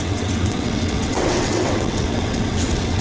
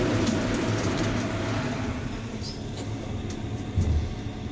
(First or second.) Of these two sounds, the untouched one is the second